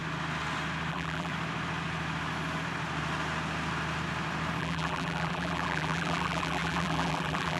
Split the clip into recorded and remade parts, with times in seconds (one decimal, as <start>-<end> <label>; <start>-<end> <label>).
0.0-0.9 recorded; 0.9-1.3 remade; 1.3-4.6 recorded; 4.6-7.6 remade